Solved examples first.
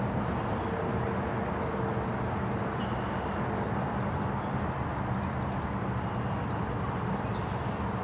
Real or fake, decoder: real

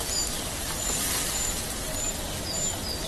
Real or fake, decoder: real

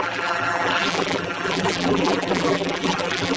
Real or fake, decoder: fake, vocoder, BigVGAN v2